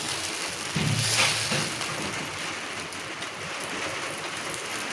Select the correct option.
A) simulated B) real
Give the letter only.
B